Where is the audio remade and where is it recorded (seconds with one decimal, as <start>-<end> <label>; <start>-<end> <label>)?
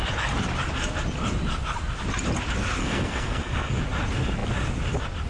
0.0-2.8 recorded; 2.8-3.8 remade; 3.8-5.3 recorded